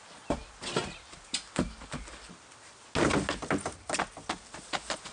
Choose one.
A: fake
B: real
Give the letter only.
B